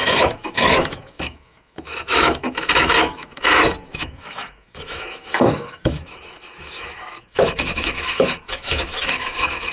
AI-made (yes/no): yes